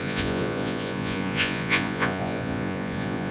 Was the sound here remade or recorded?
remade